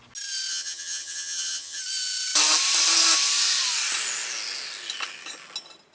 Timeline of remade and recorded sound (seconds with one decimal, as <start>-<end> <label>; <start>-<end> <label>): 0.0-0.5 recorded; 0.5-1.8 remade; 1.8-5.9 recorded